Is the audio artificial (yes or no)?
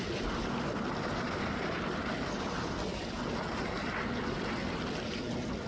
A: no